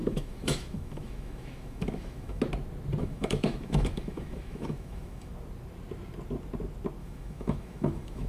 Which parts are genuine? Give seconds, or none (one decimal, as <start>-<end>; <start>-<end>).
2.4-3.0; 5.3-7.0